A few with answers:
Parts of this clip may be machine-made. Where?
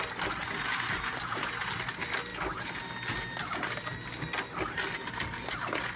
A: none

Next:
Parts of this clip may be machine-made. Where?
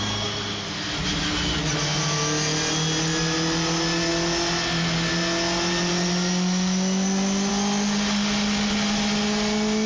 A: none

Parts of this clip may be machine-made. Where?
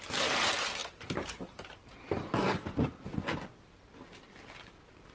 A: none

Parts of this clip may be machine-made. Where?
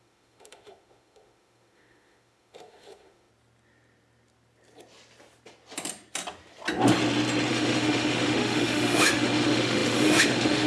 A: 0.0-3.3; 7.5-10.7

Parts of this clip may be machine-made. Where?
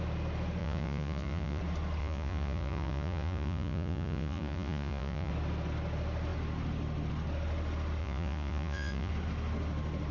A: 0.6-1.6; 2.0-5.3; 8.0-9.1